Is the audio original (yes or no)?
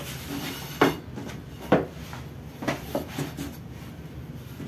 yes